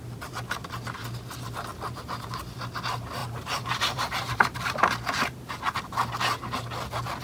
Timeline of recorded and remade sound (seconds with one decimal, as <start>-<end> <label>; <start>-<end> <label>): 0.0-3.2 recorded; 3.2-5.8 remade; 5.8-7.2 recorded